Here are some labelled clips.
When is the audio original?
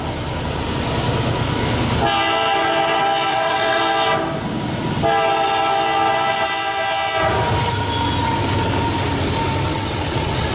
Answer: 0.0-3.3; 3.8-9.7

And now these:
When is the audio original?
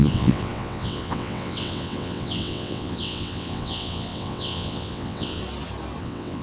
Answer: 5.4-6.0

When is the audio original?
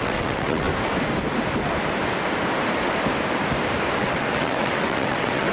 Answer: 0.7-4.0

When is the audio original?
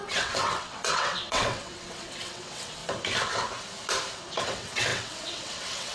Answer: 2.8-4.4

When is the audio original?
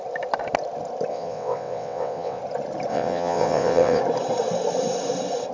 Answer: 0.0-1.1; 2.4-2.9; 4.0-5.5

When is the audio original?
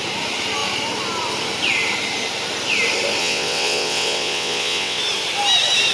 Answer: 0.0-3.2; 5.0-5.9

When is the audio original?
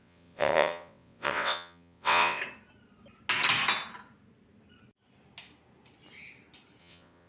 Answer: 2.4-6.8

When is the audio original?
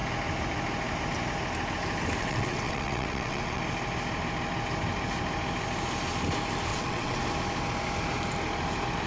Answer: 0.0-2.2; 3.6-6.7; 7.2-9.1